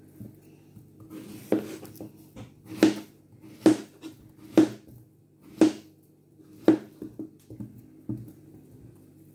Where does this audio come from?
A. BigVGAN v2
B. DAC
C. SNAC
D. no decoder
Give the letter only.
D